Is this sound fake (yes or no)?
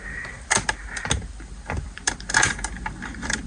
no